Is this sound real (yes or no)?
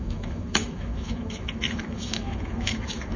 no